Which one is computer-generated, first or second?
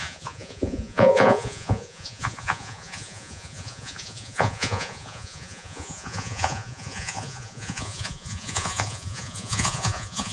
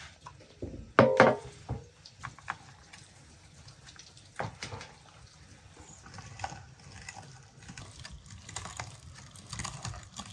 first